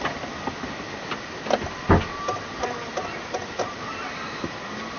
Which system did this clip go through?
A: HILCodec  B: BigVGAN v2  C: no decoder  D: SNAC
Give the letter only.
C